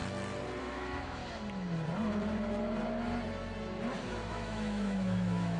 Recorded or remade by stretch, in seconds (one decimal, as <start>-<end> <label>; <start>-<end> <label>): 0.0-0.6 recorded; 0.6-1.2 remade; 1.2-4.3 recorded; 4.3-5.6 remade